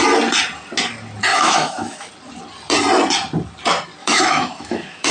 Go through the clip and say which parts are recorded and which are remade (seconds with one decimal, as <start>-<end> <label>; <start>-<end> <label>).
0.0-1.3 recorded; 1.3-2.1 remade; 2.1-4.0 recorded; 4.0-5.1 remade